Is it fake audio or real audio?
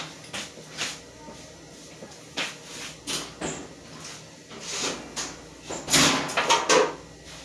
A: real